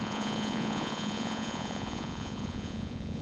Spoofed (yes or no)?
yes